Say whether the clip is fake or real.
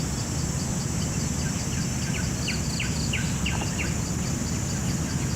real